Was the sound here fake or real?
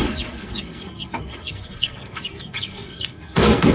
fake